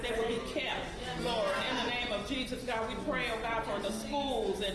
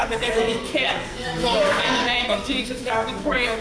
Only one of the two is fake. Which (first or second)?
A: second